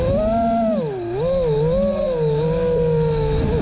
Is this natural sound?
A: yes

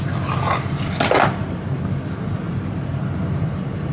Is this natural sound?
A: yes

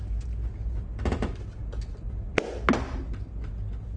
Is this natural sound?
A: yes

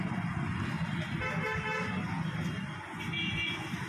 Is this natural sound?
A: yes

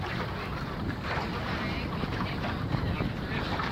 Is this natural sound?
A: yes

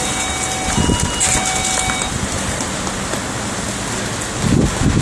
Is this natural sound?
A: yes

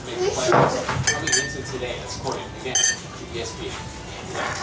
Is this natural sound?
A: yes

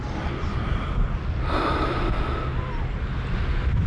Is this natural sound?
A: yes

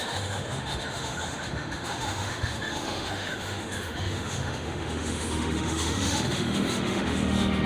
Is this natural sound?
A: no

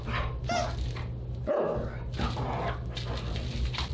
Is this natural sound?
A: yes